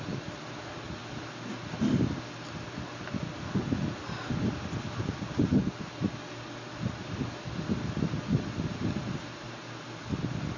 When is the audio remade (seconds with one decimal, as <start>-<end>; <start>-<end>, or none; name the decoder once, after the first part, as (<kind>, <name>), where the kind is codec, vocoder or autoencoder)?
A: none